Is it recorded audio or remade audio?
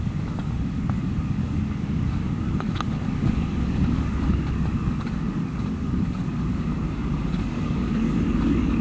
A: remade